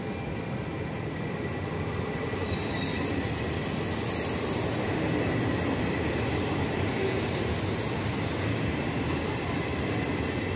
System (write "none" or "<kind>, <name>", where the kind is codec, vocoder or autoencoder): none